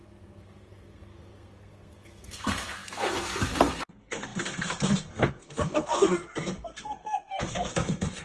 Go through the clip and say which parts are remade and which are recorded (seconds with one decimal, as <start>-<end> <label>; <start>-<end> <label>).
0.0-8.2 remade